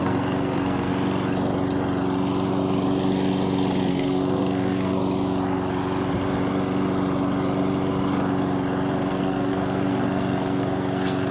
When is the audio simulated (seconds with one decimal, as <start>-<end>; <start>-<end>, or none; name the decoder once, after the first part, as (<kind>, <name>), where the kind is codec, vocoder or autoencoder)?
0.0-0.9 (codec, SNAC); 3.9-5.0; 9.1-11.3